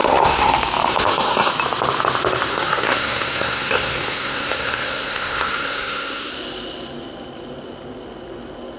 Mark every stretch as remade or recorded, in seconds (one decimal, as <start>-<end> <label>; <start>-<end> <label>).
0.0-0.5 remade; 0.5-0.9 recorded; 0.9-1.5 remade; 1.5-2.5 recorded; 2.5-6.3 remade; 6.3-8.8 recorded